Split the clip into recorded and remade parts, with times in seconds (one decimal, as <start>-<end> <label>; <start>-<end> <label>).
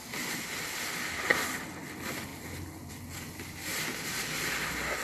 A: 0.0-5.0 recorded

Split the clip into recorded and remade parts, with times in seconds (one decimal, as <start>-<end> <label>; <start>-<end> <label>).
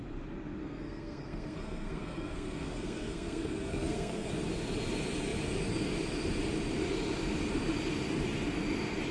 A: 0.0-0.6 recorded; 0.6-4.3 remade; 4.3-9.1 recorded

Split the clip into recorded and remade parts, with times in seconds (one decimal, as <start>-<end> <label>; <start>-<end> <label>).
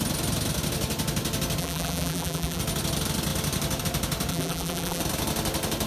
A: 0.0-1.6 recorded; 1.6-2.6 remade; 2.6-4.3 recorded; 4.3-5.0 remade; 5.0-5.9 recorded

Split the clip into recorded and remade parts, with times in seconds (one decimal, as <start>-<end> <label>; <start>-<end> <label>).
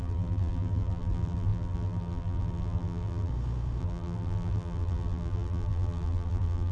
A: 0.0-3.3 remade; 3.3-3.8 recorded; 3.8-6.7 remade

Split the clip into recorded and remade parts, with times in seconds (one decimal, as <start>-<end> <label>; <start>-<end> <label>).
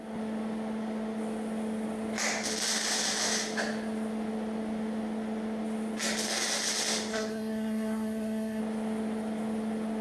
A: 0.0-7.1 recorded; 7.1-8.6 remade; 8.6-10.0 recorded